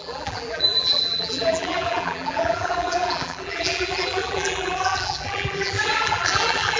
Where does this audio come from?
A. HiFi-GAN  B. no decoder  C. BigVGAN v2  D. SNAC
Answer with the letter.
C